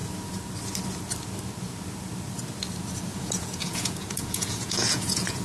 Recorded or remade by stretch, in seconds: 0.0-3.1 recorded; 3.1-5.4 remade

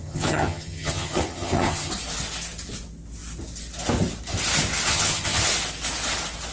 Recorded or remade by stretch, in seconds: 0.0-1.9 remade; 1.9-4.9 recorded; 4.9-5.5 remade; 5.5-6.5 recorded

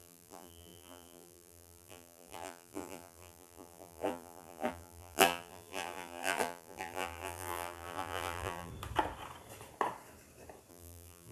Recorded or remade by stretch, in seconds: 0.0-8.7 remade; 8.7-10.7 recorded; 10.7-11.3 remade

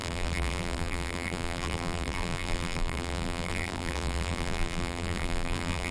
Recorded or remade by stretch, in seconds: 0.0-5.9 remade

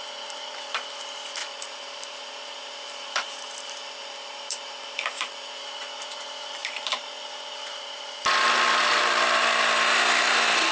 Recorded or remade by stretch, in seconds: 0.0-1.4 recorded; 1.4-5.6 remade; 5.6-6.6 recorded; 6.6-8.2 remade; 8.2-10.7 recorded